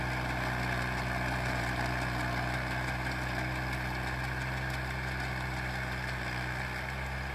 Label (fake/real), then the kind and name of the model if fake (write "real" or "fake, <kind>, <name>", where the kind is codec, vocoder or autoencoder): real